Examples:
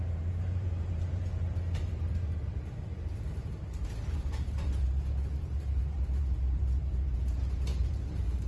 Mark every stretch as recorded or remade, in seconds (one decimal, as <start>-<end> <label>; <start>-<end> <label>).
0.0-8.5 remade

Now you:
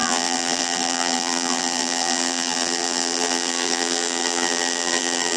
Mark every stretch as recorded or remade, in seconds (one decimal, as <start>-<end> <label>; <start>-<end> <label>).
0.0-5.4 remade

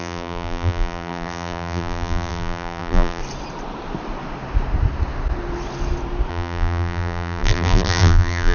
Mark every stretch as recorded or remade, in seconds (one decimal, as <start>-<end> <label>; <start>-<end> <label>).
0.0-3.2 remade; 3.2-6.3 recorded; 6.3-8.5 remade

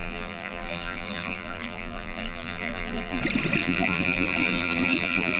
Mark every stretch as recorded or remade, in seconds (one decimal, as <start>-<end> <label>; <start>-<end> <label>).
0.0-3.2 remade; 3.2-3.6 recorded; 3.6-5.4 remade